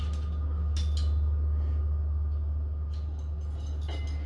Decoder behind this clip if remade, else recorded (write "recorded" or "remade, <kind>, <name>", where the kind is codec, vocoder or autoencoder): recorded